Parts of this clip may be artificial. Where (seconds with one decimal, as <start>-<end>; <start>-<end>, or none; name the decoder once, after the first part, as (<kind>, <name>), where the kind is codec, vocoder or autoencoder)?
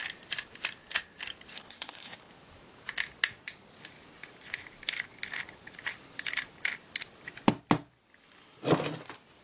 1.5-2.3 (codec, HILCodec)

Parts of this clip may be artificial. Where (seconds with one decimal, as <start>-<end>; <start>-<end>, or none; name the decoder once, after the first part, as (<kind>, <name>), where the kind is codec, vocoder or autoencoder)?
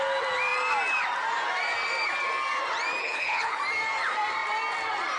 3.0-3.6 (codec, HILCodec)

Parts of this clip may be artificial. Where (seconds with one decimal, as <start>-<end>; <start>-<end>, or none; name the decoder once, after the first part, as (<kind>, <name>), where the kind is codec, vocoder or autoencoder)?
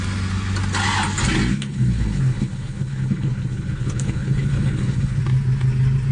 1.5-5.2 (codec, HILCodec)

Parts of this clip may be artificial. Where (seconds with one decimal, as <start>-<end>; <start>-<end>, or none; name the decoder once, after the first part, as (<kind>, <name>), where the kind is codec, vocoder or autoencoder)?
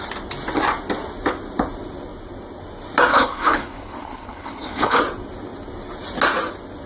3.1-5.0 (codec, HILCodec)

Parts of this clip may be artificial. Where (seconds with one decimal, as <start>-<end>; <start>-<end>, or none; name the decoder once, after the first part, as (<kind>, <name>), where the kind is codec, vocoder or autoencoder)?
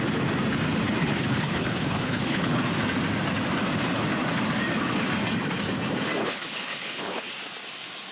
1.0-2.6 (codec, HILCodec); 6.2-7.3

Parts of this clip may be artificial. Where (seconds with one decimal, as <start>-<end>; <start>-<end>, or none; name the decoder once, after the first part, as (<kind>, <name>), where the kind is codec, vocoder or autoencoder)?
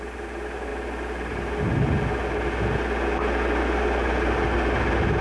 none